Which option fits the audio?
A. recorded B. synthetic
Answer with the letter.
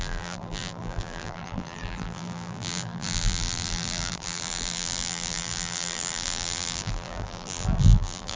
B